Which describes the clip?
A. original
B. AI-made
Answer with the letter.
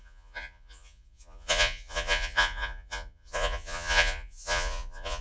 B